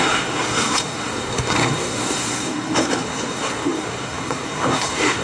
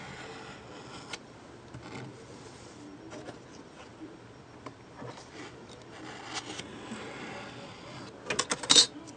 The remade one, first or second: first